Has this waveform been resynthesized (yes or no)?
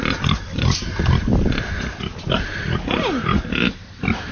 no